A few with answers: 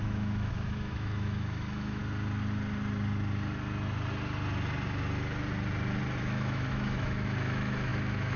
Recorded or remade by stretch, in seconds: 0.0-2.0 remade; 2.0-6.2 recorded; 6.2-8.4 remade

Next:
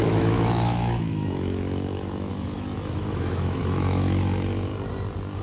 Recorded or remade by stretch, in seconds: 0.0-4.7 remade; 4.7-5.4 recorded

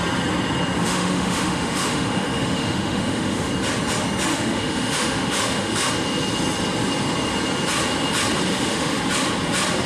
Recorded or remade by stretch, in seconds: 0.0-0.8 recorded; 0.8-3.5 remade; 3.5-4.3 recorded; 4.3-5.9 remade; 5.9-8.5 recorded; 8.5-9.0 remade; 9.0-9.9 recorded

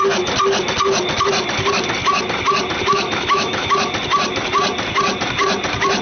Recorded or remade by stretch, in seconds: 0.0-2.9 recorded; 2.9-3.7 remade; 3.7-6.0 recorded